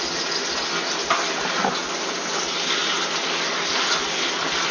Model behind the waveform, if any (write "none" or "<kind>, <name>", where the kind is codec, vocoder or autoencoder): none